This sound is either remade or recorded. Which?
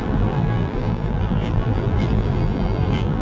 remade